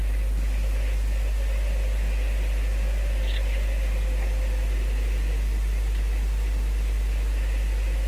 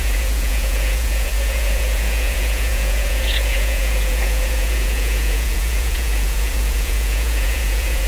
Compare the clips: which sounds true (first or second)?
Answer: first